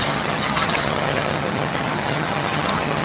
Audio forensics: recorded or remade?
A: remade